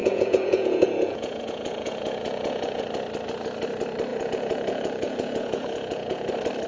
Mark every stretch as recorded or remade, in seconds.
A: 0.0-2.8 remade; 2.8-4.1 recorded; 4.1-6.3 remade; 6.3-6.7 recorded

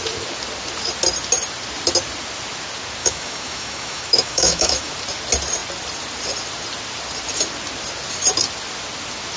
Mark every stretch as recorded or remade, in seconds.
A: 0.0-3.0 recorded; 3.0-4.9 remade; 4.9-9.4 recorded

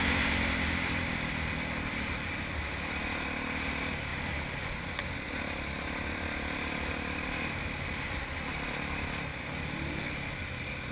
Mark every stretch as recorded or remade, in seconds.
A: 0.0-10.9 recorded

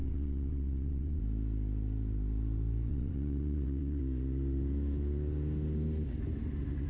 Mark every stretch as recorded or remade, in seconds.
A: 0.0-1.2 remade; 1.2-2.9 recorded; 2.9-4.0 remade; 4.0-6.9 recorded

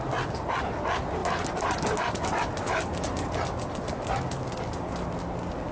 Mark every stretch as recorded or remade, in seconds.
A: 0.0-5.7 recorded